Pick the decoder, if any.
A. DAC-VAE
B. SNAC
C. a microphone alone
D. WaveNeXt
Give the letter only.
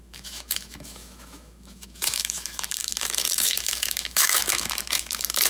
A